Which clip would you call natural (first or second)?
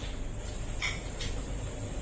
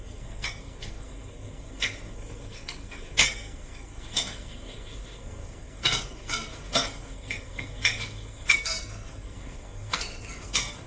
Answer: first